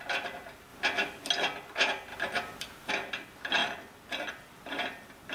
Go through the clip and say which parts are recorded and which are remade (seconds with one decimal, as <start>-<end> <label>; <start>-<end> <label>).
0.0-5.3 recorded